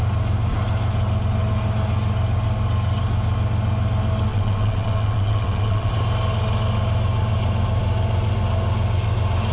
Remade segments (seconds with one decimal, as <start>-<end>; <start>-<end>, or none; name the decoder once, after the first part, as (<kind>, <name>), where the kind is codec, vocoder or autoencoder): 4.3-5.9 (vocoder, WaveNeXt)